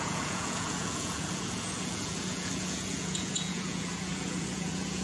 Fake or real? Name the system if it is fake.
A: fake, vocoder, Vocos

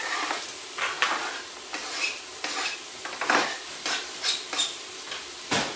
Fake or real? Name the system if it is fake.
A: real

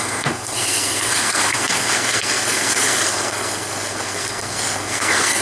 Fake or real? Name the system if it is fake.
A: fake, codec, SNAC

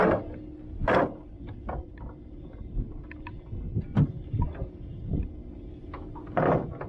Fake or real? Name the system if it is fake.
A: real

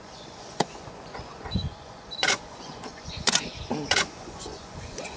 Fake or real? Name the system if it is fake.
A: fake, vocoder, Vocos